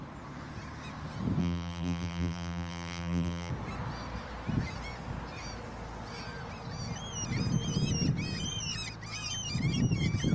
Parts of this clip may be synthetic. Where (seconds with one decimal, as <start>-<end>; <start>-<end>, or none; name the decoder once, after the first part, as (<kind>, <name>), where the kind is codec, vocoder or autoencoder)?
1.4-3.5 (vocoder, BigVGAN v2)